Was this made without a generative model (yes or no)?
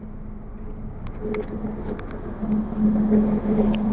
yes